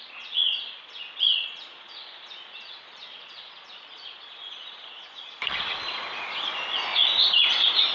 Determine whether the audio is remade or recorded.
remade